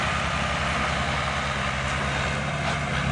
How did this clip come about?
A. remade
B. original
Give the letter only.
B